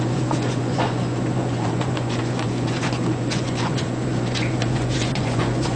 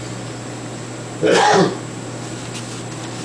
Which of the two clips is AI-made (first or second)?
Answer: first